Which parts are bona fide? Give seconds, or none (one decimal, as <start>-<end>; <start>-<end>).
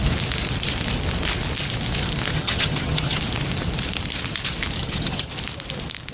0.0-2.3; 3.2-4.8; 5.3-6.1